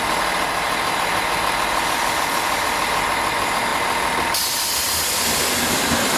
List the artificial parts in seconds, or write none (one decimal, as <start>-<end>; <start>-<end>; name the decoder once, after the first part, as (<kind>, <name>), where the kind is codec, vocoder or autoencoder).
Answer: none